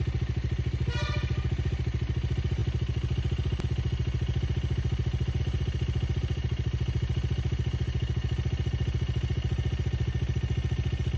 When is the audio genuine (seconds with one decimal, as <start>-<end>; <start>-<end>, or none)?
0.0-11.2

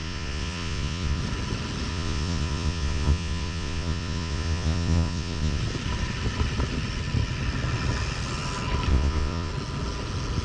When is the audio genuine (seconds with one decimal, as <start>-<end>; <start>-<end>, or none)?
1.2-1.9; 5.6-8.9; 9.5-10.4

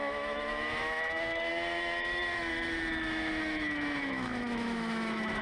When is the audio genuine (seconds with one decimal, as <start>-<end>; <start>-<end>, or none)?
none

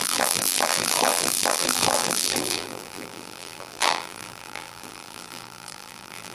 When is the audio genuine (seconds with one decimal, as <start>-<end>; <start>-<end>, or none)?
none

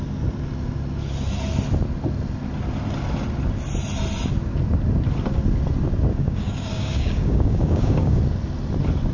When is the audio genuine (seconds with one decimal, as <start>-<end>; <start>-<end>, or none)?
0.0-6.1; 8.2-9.1

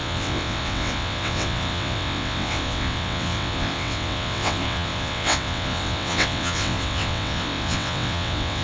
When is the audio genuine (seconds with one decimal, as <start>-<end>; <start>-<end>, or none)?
none

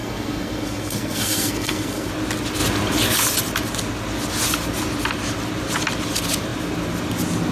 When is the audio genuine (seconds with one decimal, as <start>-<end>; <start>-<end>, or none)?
2.1-7.5

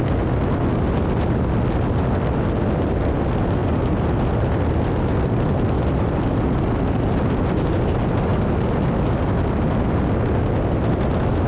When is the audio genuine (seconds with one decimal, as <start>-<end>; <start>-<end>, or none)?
0.0-11.5